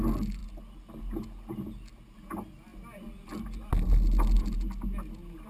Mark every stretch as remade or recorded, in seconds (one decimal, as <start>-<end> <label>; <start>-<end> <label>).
0.0-5.5 recorded